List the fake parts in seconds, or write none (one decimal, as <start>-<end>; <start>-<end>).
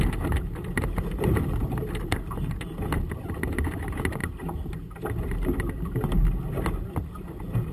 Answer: none